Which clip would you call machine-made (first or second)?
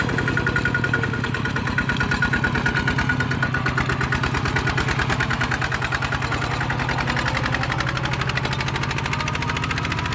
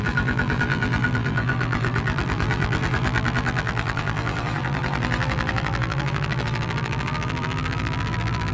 second